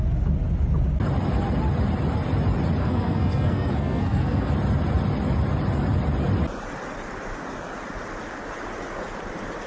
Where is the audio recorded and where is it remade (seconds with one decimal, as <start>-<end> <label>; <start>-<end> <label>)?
0.0-2.8 recorded; 2.8-4.5 remade; 4.5-9.7 recorded